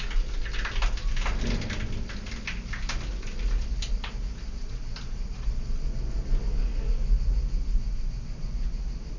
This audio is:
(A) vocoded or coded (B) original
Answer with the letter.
B